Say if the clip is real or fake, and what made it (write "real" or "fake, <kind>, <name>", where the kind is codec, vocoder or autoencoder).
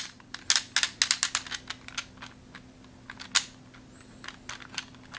real